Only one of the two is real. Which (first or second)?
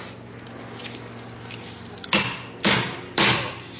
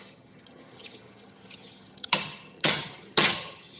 first